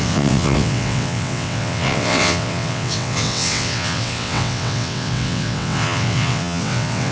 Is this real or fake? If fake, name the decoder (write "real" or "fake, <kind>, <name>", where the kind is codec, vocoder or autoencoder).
fake, vocoder, WaveNeXt